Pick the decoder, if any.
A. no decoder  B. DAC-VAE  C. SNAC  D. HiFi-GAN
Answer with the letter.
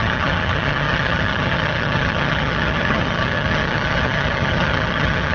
D